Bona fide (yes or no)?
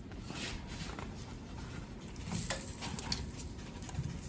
yes